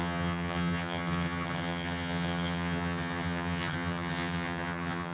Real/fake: fake